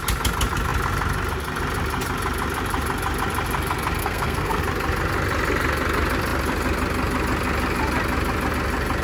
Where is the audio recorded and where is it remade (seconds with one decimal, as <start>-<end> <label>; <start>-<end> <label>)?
0.0-4.0 recorded; 4.0-4.6 remade; 4.6-9.0 recorded